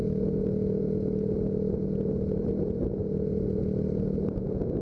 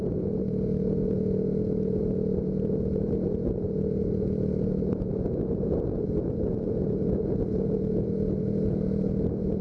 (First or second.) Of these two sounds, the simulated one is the second